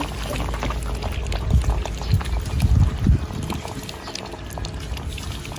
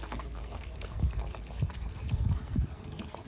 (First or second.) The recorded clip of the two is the first